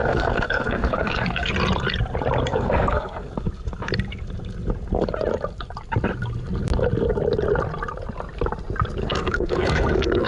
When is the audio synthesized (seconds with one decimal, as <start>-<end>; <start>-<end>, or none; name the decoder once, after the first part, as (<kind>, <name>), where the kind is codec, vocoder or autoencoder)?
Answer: 0.0-1.5 (codec, SNAC); 2.5-3.3; 9.0-10.3